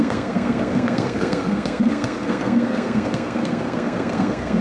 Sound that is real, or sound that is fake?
fake